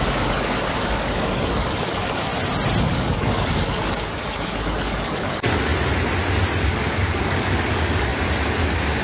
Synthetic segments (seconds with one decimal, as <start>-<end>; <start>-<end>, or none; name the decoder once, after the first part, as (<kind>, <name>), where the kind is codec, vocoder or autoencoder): 0.0-2.3 (codec, DAC); 2.8-5.7; 6.6-8.1; 8.6-9.0